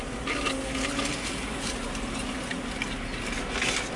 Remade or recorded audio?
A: recorded